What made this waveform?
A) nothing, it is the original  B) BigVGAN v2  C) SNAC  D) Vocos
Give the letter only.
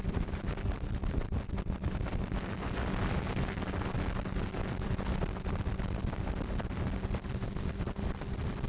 A